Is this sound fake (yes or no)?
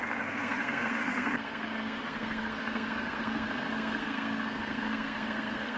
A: yes